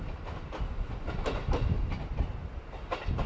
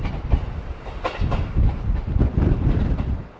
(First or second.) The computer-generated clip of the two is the second